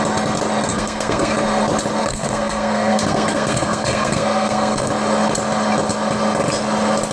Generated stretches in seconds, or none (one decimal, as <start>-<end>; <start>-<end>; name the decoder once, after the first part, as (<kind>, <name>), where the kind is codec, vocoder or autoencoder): 0.7-1.3 (codec, SNAC); 2.0-4.9